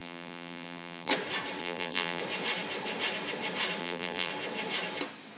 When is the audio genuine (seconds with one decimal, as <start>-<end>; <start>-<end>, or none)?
1.1-1.6; 2.2-3.8; 4.3-5.4